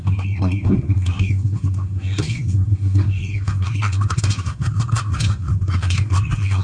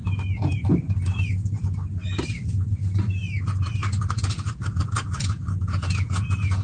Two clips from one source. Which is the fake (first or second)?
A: first